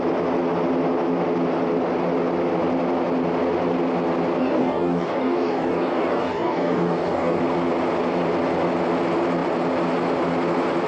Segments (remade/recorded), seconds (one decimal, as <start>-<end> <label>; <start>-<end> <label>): 0.0-4.4 recorded; 4.4-7.4 remade; 7.4-10.9 recorded